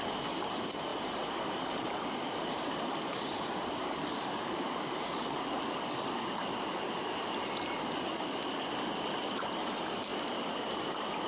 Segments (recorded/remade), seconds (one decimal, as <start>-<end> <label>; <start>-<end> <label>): 0.0-11.3 recorded